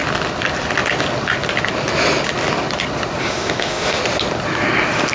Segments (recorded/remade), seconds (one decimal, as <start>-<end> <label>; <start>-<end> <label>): 0.0-3.2 recorded; 3.2-4.0 remade; 4.0-5.1 recorded